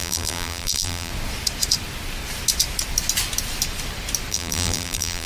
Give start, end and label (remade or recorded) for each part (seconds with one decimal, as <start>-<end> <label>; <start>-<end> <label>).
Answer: 0.0-1.1 remade; 1.1-4.3 recorded; 4.3-5.3 remade